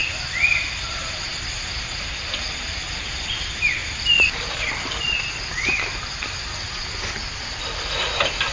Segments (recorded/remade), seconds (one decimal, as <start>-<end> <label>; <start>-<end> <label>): 0.0-8.5 remade